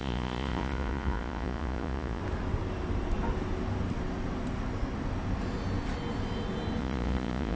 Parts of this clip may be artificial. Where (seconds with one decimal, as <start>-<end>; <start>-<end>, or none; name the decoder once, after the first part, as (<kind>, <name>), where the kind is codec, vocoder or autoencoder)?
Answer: 0.0-2.2 (vocoder, Vocos); 6.8-7.6